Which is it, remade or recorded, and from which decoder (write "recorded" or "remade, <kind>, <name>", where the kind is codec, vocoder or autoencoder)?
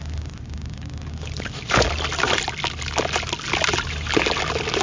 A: recorded